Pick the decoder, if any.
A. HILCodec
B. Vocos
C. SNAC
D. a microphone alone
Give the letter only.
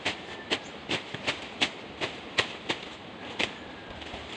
D